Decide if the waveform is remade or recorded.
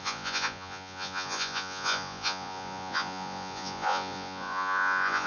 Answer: remade